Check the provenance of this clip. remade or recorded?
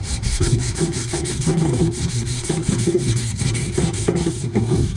remade